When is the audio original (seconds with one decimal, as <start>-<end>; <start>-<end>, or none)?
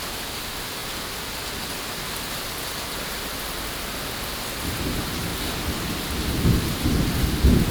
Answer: 0.0-7.7